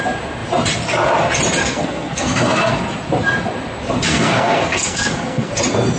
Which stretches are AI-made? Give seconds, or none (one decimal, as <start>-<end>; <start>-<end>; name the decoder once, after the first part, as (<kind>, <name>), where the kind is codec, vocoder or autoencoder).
1.6-2.8 (codec, SNAC); 4.1-5.5